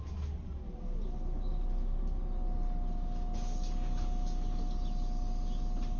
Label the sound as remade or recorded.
recorded